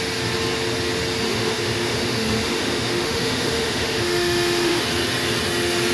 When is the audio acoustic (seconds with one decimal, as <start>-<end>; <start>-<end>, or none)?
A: 0.0-1.3; 4.8-5.9